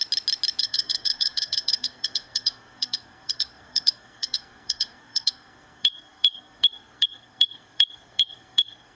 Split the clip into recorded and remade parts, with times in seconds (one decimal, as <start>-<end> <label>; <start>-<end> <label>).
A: 0.0-0.6 recorded; 0.6-9.0 remade